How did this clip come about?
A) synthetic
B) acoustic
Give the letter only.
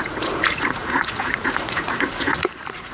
A